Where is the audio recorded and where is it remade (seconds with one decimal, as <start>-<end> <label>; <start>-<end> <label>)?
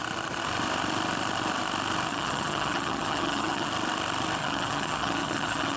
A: 0.0-2.1 recorded; 2.1-3.7 remade; 3.7-4.4 recorded; 4.4-5.8 remade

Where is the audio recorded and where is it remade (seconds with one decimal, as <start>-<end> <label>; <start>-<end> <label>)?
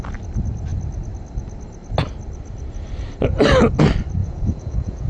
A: 0.0-4.2 recorded; 4.2-5.1 remade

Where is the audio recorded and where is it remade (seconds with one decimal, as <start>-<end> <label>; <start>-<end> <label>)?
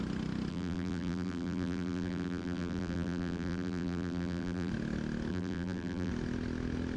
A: 0.0-0.5 recorded; 0.5-4.7 remade; 4.7-5.3 recorded; 5.3-6.1 remade; 6.1-7.0 recorded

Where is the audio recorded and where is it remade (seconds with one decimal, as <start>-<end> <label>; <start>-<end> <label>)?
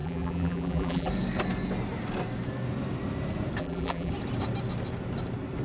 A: 0.0-1.1 remade; 1.1-3.6 recorded; 3.6-4.1 remade; 4.1-5.6 recorded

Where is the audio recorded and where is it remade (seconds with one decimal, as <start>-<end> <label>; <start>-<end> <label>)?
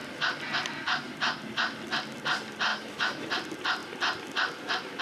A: 0.0-2.7 recorded; 2.7-3.3 remade; 3.3-5.0 recorded